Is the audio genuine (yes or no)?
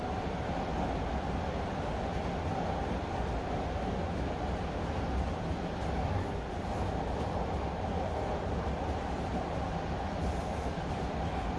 yes